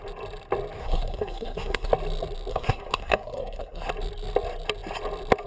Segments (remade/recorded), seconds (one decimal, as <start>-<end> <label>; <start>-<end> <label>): 0.0-0.8 recorded; 0.8-1.9 remade; 1.9-2.5 recorded; 2.5-3.9 remade; 3.9-5.5 recorded